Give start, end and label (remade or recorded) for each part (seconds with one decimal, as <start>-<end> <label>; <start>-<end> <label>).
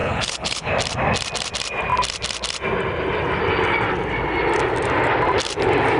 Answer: 0.0-0.7 remade; 0.7-6.0 recorded